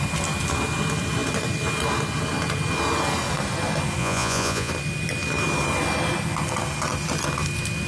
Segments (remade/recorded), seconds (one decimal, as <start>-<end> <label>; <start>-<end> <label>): 0.0-4.0 recorded; 4.0-4.7 remade; 4.7-7.9 recorded

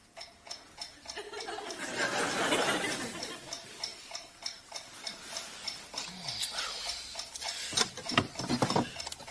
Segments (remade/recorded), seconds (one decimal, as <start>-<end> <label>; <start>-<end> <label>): 0.0-1.0 remade; 1.0-9.3 recorded

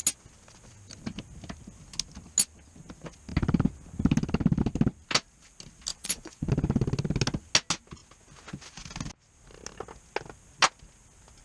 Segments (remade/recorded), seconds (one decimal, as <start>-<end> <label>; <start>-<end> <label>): 0.0-5.9 recorded; 5.9-6.5 remade; 6.5-11.4 recorded

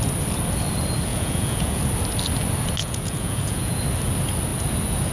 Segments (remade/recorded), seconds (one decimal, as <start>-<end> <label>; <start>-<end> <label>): 0.0-1.1 recorded; 1.1-1.8 remade; 1.8-2.8 recorded; 2.8-3.8 remade; 3.8-5.1 recorded

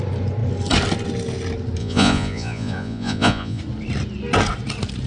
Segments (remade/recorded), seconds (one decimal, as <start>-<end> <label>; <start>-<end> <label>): 0.0-1.8 recorded; 1.8-3.6 remade; 3.6-5.1 recorded

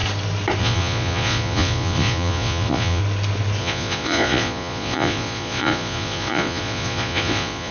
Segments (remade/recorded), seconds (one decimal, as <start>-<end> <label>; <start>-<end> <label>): 0.0-0.6 recorded; 0.6-3.0 remade; 3.0-3.6 recorded; 3.6-7.7 remade

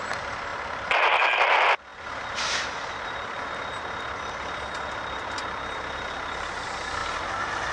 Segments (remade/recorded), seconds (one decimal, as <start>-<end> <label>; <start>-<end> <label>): 0.0-7.7 recorded